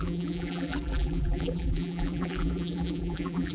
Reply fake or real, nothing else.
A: fake